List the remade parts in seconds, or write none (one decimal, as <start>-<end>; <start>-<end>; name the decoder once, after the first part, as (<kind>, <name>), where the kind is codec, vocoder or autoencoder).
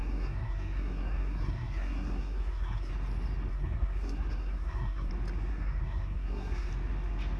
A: 0.0-2.9 (codec, SNAC); 3.5-5.1; 5.5-6.7